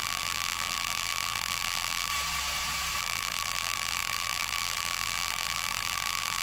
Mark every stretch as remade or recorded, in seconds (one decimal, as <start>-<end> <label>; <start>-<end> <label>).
0.0-2.1 remade; 2.1-3.0 recorded; 3.0-6.4 remade